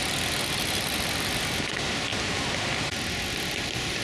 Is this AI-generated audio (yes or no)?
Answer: no